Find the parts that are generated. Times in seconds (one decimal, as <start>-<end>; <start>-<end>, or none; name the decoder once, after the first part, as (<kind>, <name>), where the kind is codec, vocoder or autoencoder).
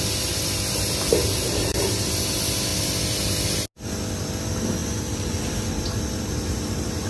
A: 1.1-2.1 (vocoder, BigVGAN v2); 4.8-7.1